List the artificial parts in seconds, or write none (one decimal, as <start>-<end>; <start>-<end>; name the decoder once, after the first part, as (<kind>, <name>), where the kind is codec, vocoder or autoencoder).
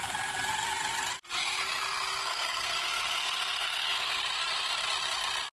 2.2-4.2 (codec, SNAC)